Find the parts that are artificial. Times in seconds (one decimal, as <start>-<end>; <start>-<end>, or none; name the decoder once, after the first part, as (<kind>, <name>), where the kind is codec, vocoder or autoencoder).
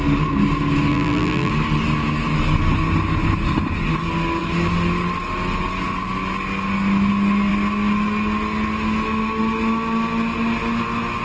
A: 0.9-1.5 (vocoder, BigVGAN v2)